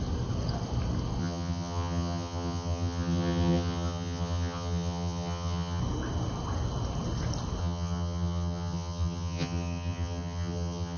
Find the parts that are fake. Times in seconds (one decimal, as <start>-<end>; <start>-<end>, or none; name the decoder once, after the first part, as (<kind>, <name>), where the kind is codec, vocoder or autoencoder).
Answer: 1.2-5.8 (vocoder, HiFi-GAN); 7.6-11.0